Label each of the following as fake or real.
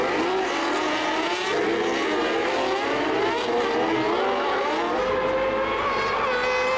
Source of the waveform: real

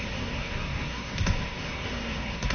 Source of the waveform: fake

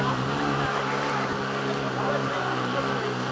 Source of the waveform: real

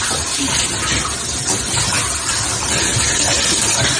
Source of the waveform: real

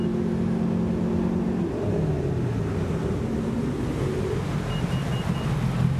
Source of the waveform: real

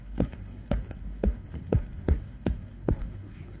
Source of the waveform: fake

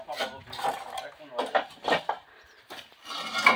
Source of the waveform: real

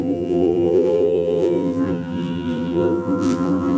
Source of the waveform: fake